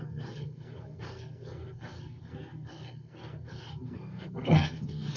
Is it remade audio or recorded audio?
remade